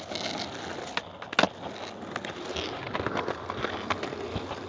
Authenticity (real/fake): real